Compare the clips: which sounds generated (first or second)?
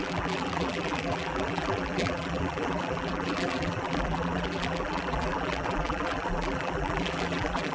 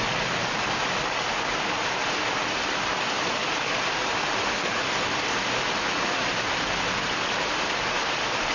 first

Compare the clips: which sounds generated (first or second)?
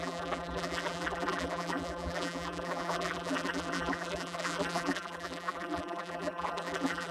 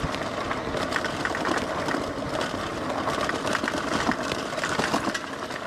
first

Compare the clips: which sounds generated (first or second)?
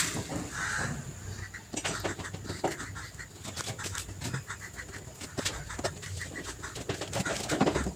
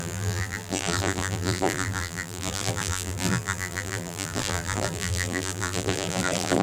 second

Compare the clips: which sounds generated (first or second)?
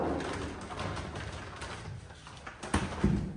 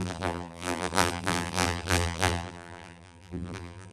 second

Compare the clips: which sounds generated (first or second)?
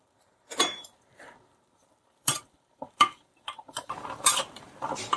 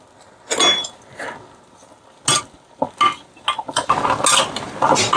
first